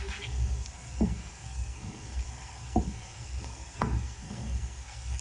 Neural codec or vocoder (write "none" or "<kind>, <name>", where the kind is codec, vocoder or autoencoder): codec, SNAC